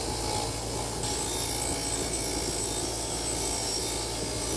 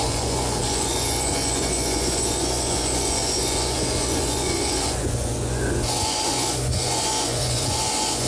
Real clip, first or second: first